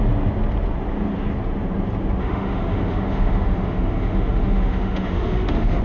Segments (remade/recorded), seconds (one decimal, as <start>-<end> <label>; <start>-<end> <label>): 0.0-2.2 recorded; 2.2-5.8 remade